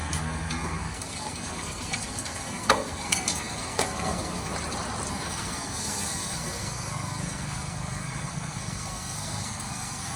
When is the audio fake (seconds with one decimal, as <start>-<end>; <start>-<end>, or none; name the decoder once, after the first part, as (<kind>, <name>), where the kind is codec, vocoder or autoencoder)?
0.0-4.5 (codec, SNAC); 5.1-10.2